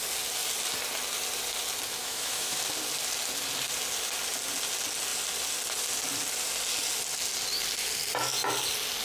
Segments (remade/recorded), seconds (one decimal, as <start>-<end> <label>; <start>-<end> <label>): 0.0-2.0 recorded; 2.0-2.6 remade; 2.6-9.0 recorded